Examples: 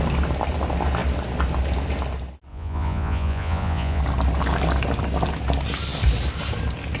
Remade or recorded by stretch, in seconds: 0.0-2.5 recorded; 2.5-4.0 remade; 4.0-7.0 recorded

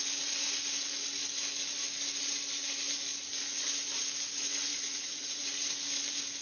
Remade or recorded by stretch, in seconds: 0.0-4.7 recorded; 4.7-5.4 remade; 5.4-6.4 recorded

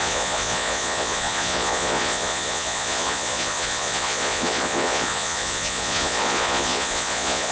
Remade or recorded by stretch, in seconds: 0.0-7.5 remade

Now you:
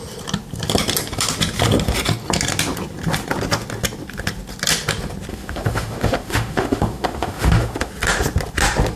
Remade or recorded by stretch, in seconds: 0.0-5.3 recorded; 5.3-7.9 remade; 7.9-9.0 recorded

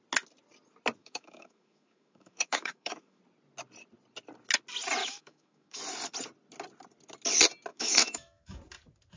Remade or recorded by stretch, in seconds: 0.0-1.0 recorded; 1.0-3.2 remade; 3.2-5.0 recorded; 5.0-5.8 remade; 5.8-7.7 recorded; 7.7-8.6 remade; 8.6-9.2 recorded